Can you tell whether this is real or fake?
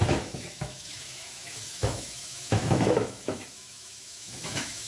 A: fake